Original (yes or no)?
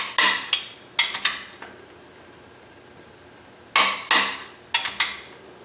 yes